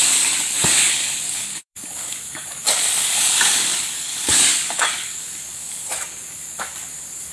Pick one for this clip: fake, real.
fake